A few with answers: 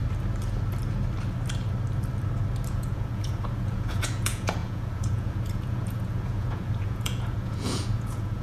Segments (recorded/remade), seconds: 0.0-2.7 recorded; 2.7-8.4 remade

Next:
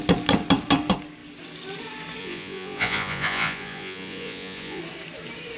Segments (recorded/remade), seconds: 0.0-2.2 recorded; 2.2-4.8 remade; 4.8-5.6 recorded

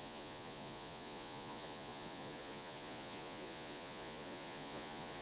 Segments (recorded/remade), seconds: 0.0-5.2 remade

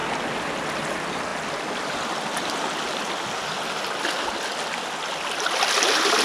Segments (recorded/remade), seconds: 0.0-6.2 recorded

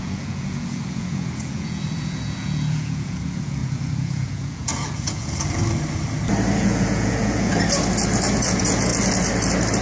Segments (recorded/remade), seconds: 0.0-5.6 remade; 5.6-6.6 recorded; 6.6-7.5 remade; 7.5-8.4 recorded; 8.4-8.9 remade; 8.9-9.8 recorded

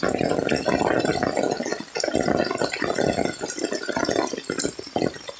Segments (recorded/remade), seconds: 0.0-5.4 recorded

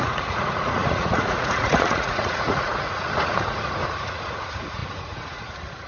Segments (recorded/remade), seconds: 0.0-5.9 remade